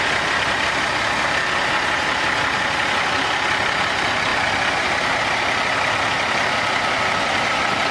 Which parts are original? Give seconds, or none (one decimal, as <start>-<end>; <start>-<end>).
0.0-7.9